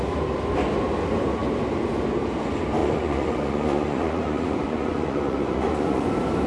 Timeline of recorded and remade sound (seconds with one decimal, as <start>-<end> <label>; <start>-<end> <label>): 0.0-2.8 recorded; 2.8-6.1 remade; 6.1-6.5 recorded